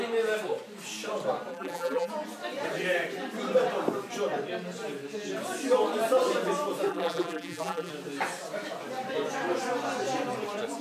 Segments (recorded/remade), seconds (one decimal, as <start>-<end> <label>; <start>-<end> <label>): 0.0-1.5 recorded; 1.5-2.1 remade; 2.1-6.9 recorded; 6.9-7.9 remade; 7.9-10.8 recorded